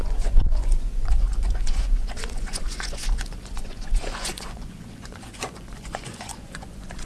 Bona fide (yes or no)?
no